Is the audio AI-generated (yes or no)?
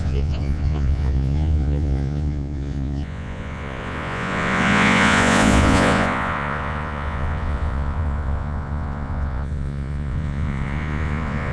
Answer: yes